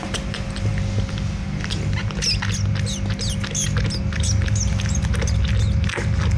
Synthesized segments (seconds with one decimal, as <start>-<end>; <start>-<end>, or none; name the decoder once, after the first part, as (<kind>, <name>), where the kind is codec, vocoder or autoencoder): none